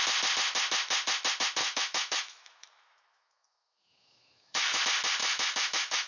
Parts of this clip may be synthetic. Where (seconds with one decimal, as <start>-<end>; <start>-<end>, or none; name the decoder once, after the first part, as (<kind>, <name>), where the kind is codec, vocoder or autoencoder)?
1.6-4.8 (autoencoder, DAC-VAE); 5.2-6.1

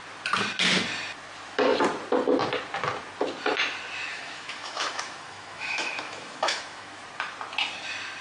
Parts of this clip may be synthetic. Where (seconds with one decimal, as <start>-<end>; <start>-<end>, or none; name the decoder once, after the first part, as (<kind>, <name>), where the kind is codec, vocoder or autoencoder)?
4.1-7.0 (autoencoder, DAC-VAE)

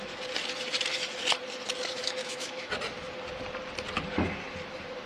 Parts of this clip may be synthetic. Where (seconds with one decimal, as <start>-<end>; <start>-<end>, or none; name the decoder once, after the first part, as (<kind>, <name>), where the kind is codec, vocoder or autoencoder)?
2.2-2.7 (autoencoder, DAC-VAE)

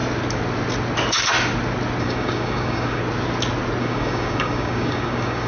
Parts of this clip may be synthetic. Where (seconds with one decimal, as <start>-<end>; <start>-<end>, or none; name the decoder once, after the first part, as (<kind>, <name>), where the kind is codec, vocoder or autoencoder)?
2.0-3.0 (codec, DAC); 3.8-5.5